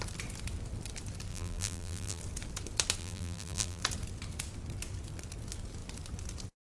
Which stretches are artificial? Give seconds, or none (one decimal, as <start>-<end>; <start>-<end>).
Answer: 1.3-2.2; 3.0-3.8